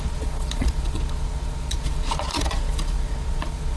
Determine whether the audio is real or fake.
fake